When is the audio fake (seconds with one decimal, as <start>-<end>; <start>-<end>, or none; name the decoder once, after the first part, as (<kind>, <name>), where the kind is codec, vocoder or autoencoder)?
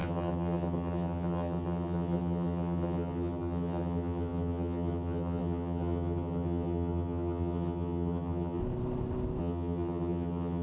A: 0.0-8.6 (vocoder, HiFi-GAN); 9.4-10.6